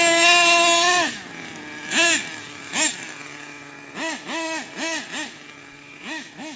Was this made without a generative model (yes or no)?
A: yes